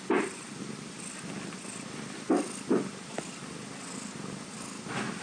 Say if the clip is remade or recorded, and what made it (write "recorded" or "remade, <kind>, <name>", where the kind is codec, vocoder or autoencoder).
recorded